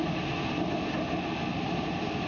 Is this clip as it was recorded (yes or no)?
yes